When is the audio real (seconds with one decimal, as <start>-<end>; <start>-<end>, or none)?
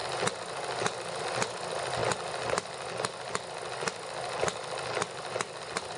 0.0-6.0